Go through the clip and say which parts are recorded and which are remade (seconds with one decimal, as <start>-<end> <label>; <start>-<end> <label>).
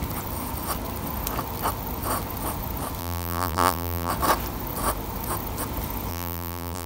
0.0-3.0 recorded; 3.0-4.1 remade; 4.1-6.1 recorded; 6.1-6.9 remade